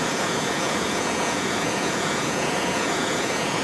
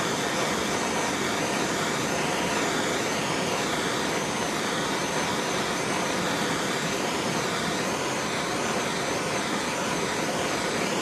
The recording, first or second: second